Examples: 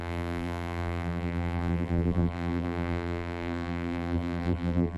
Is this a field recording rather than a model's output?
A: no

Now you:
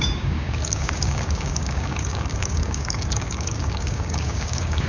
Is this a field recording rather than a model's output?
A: no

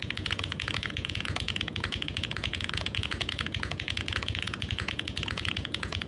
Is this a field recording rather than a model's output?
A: no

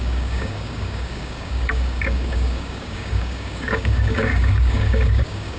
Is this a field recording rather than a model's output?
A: no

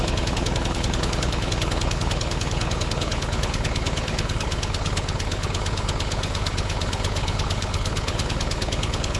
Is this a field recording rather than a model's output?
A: no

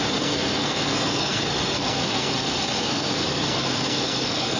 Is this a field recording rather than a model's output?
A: no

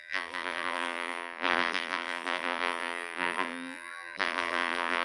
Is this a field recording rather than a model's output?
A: no